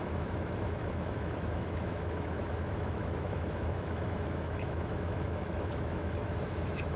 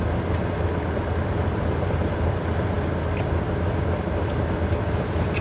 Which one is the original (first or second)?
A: second